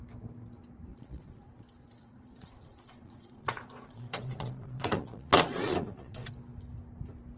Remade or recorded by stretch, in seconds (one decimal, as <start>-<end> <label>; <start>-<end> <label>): 0.0-0.9 recorded; 0.9-1.6 remade; 1.6-2.0 recorded; 2.0-6.3 remade; 6.3-7.4 recorded